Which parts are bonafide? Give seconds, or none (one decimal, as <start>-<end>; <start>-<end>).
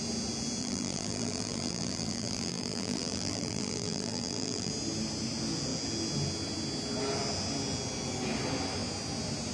0.0-0.6; 4.7-9.5